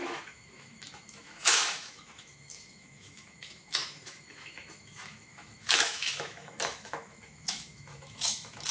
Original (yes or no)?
no